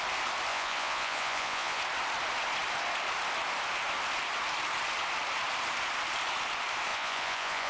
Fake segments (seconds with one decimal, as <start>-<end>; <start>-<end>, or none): 0.5-1.8; 6.9-7.7